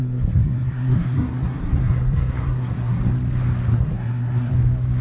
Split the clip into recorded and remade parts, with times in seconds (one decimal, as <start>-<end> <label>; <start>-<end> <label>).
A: 0.0-3.0 remade; 3.0-3.7 recorded; 3.7-4.5 remade; 4.5-5.0 recorded